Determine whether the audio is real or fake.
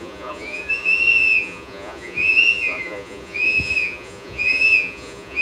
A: fake